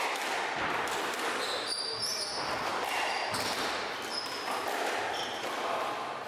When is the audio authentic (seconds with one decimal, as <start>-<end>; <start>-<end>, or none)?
0.0-6.3